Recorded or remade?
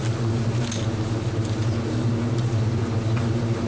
recorded